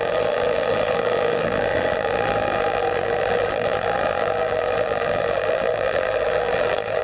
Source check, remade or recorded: remade